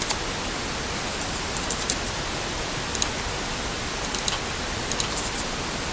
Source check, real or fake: real